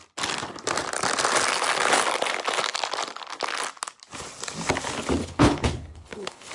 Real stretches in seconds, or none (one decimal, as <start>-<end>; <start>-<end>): 0.0-5.2